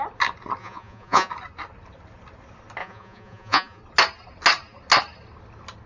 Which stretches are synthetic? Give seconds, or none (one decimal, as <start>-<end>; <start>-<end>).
0.6-1.3; 2.8-3.8